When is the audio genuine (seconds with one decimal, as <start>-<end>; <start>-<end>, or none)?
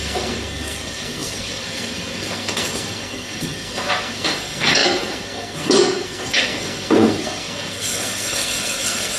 none